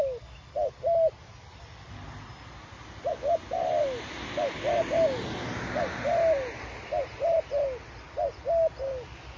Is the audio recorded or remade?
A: recorded